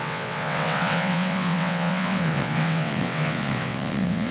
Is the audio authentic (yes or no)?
no